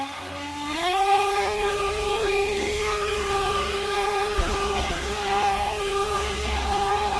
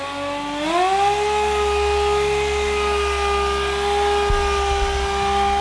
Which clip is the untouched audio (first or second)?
second